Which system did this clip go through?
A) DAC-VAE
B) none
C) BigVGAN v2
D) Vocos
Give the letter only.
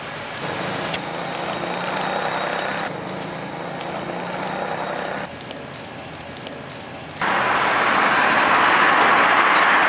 B